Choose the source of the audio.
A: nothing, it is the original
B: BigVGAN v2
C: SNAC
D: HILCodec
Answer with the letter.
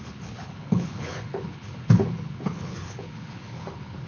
D